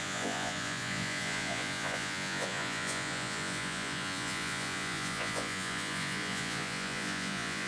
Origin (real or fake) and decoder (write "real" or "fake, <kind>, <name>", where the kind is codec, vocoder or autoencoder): fake, vocoder, Vocos